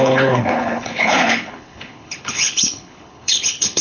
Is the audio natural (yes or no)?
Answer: no